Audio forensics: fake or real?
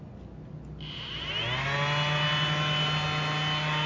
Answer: real